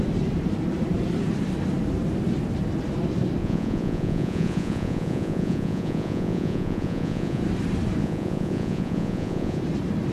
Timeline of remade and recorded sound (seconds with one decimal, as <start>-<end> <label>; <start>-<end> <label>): 0.0-3.4 recorded; 3.4-7.4 remade; 7.4-8.0 recorded; 8.0-9.6 remade; 9.6-10.1 recorded